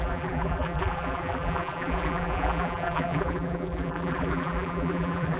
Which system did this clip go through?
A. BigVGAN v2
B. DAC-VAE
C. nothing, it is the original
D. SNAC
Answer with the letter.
A